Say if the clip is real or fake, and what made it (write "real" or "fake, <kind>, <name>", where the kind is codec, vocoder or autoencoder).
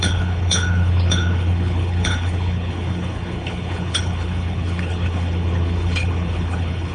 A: fake, codec, HILCodec